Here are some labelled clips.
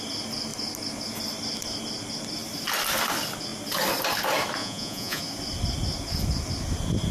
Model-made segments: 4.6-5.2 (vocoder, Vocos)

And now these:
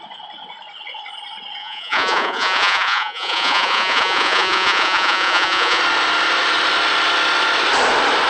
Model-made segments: 1.6-5.8 (vocoder, Vocos)